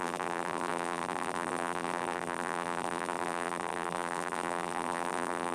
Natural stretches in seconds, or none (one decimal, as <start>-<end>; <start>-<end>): none